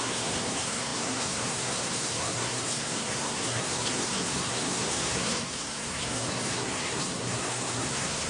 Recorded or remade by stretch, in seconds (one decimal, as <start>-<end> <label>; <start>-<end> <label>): 0.0-8.3 remade